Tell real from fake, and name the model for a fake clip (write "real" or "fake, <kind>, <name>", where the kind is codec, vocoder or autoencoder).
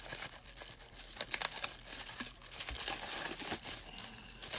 real